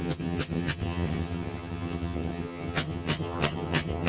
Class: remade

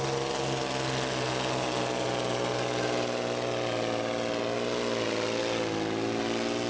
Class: recorded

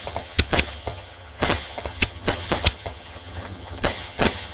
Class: remade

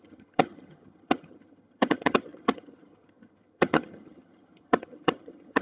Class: remade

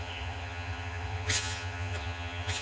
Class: remade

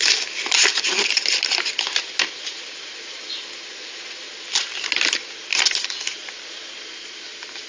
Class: recorded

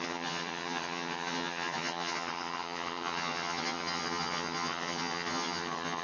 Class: remade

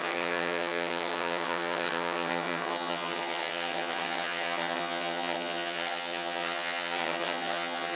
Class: remade